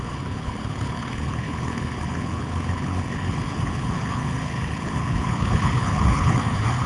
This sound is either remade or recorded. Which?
remade